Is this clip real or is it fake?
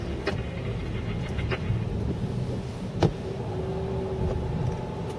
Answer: real